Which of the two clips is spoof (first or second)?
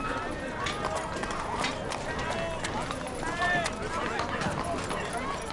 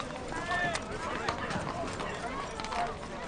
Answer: second